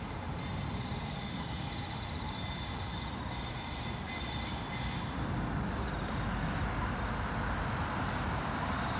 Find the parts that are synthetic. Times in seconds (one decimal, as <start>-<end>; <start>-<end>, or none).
none